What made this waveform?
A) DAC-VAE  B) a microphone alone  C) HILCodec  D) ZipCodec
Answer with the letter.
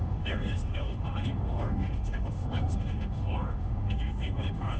A